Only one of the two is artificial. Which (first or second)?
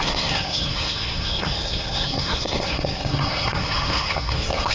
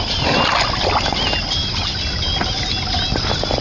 first